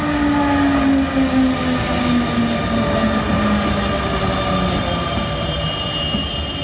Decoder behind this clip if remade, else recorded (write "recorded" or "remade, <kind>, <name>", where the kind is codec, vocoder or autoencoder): recorded